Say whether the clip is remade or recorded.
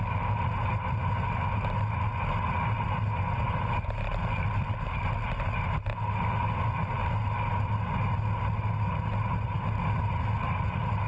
recorded